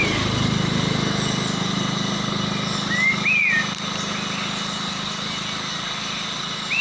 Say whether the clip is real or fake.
real